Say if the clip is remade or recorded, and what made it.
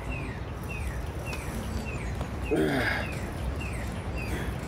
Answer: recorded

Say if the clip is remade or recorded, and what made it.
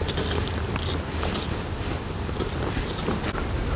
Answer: recorded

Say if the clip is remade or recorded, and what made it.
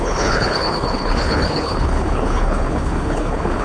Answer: remade, codec, HILCodec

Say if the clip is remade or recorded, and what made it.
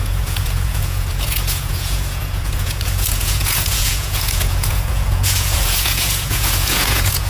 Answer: remade, vocoder, Vocos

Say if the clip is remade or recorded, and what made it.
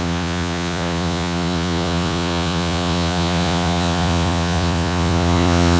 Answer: remade, vocoder, Vocos